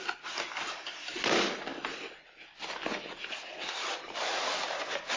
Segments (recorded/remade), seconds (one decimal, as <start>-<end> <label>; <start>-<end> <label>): 0.0-5.2 recorded